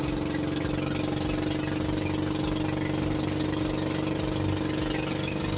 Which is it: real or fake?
real